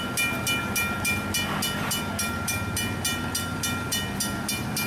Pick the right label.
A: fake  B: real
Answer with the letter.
B